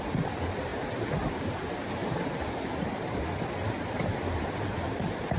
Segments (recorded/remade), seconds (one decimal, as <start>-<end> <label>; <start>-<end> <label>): 0.0-0.7 recorded; 0.7-1.4 remade; 1.4-2.0 recorded; 2.0-5.4 remade